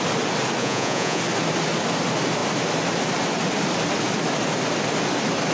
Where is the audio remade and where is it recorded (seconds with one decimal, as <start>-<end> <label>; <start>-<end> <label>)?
0.0-0.6 recorded; 0.6-1.2 remade; 1.2-5.5 recorded